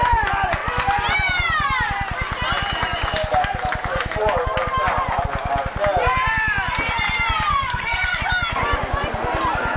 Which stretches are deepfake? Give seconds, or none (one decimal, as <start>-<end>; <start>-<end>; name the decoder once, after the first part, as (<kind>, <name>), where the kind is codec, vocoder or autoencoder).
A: 7.5-8.2 (codec, SNAC)